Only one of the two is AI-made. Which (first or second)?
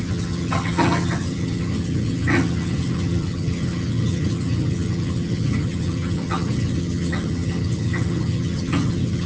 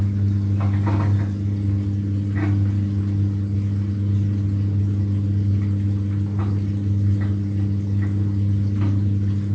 first